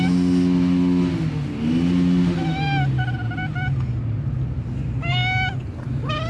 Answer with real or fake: real